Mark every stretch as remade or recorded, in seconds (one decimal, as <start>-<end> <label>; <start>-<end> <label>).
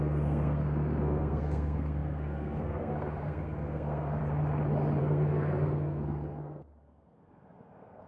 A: 0.0-4.2 remade; 4.2-5.0 recorded; 5.0-8.1 remade